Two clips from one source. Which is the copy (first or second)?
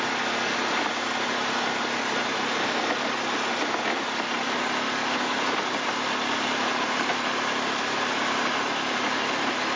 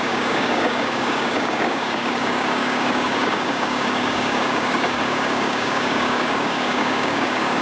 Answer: second